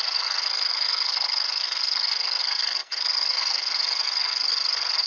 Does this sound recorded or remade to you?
remade